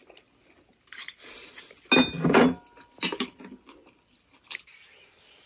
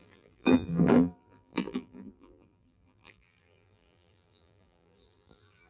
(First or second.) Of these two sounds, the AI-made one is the second